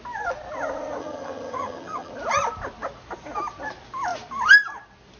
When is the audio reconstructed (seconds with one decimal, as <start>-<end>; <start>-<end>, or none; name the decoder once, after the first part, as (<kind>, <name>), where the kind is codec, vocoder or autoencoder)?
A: 1.0-2.1 (vocoder, HiFi-GAN)